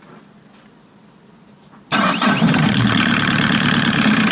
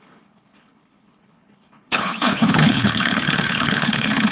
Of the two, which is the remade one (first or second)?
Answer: second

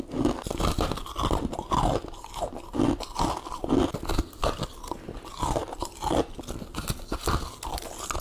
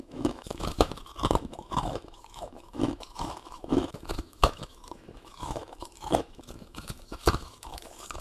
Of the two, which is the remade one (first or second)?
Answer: second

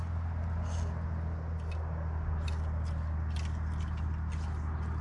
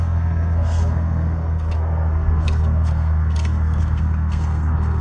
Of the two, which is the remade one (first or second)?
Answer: second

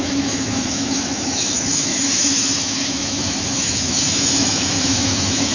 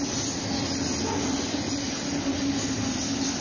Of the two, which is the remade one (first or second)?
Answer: first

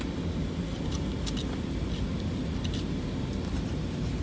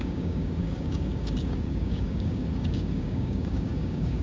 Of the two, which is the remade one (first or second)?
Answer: second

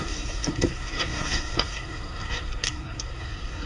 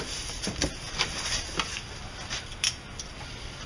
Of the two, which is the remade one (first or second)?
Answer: first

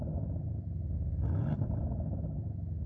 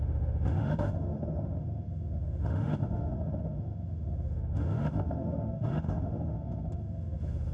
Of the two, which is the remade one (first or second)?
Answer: second